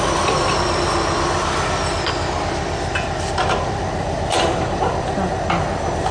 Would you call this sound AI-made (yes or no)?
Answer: yes